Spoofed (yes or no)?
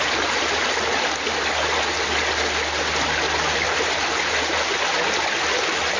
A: no